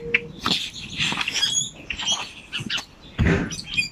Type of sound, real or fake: real